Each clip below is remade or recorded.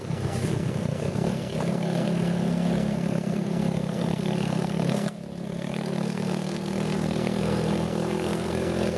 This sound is remade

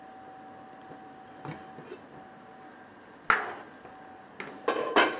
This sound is recorded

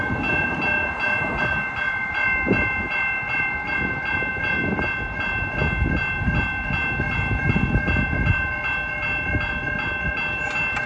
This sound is recorded